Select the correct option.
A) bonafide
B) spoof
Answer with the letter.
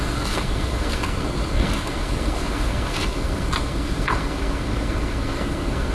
B